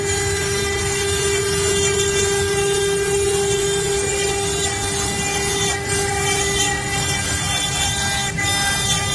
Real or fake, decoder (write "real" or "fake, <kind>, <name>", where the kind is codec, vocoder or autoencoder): real